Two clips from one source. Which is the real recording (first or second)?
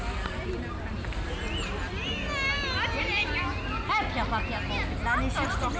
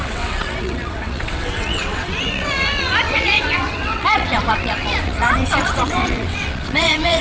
first